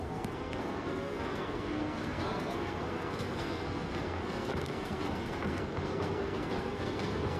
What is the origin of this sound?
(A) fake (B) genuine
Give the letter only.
A